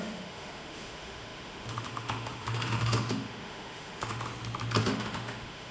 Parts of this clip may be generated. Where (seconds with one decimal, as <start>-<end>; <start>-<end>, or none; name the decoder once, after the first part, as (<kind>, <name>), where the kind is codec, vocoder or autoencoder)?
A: 0.0-4.3 (autoencoder, DAC-VAE); 4.8-5.7